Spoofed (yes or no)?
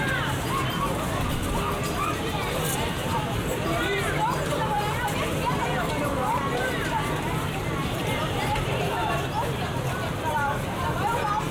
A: yes